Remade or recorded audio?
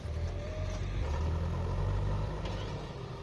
recorded